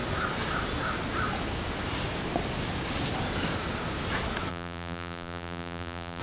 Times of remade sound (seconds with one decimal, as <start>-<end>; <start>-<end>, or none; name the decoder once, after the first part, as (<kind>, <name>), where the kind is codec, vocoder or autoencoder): 4.5-6.2 (vocoder, BigVGAN v2)